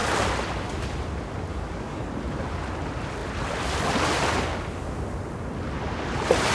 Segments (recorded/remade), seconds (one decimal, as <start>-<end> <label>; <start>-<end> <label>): 0.0-1.5 recorded; 1.5-2.1 remade; 2.1-6.5 recorded